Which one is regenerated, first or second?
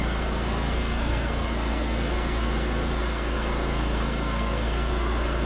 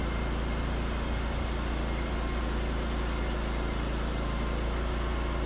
first